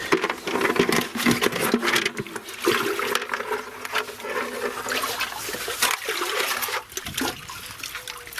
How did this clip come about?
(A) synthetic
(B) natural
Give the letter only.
B